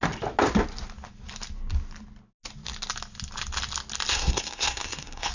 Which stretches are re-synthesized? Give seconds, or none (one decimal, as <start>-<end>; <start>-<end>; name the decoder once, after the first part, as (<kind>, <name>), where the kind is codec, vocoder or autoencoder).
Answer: 4.1-5.3 (codec, SNAC)